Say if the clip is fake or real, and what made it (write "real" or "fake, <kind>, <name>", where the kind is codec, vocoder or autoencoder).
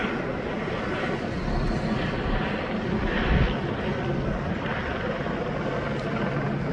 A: real